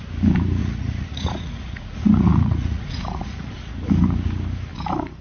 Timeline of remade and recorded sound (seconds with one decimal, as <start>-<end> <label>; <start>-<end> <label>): 0.0-0.6 recorded; 0.6-3.7 remade; 3.7-5.2 recorded